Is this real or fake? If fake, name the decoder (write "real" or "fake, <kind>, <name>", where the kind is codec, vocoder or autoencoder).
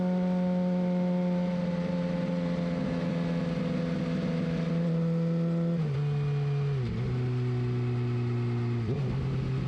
real